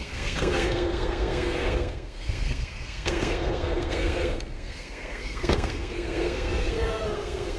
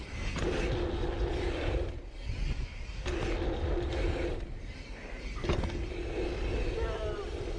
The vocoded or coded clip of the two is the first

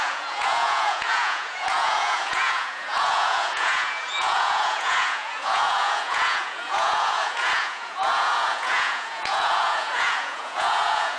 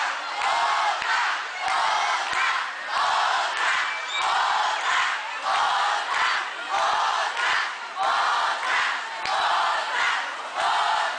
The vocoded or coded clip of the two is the first